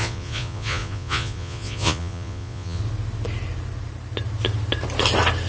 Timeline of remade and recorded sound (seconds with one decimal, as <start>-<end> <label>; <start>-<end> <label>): 0.0-2.8 remade; 2.8-5.5 recorded